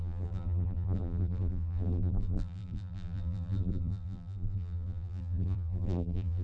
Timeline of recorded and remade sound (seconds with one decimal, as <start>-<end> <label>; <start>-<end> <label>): 0.0-6.4 remade